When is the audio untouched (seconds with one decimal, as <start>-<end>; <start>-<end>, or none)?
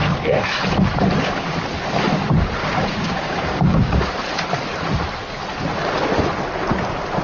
0.0-2.6; 4.1-7.2